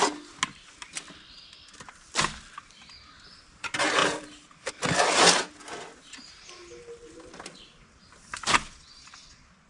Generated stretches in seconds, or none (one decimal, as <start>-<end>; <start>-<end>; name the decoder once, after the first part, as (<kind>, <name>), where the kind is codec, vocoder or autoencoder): 4.0-4.7 (vocoder, BigVGAN v2)